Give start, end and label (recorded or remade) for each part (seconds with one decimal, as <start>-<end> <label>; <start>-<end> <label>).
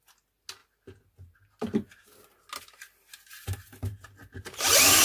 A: 0.0-5.0 recorded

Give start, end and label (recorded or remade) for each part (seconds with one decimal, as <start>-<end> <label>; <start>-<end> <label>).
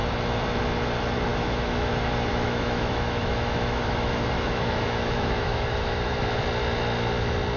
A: 0.0-1.3 recorded; 1.3-1.9 remade; 1.9-2.3 recorded; 2.3-6.4 remade; 6.4-7.6 recorded